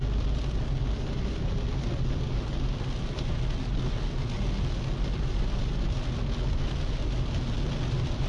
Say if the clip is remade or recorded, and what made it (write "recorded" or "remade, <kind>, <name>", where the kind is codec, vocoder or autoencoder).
recorded